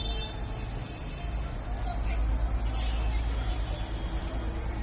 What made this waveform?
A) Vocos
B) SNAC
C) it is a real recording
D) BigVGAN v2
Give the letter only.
C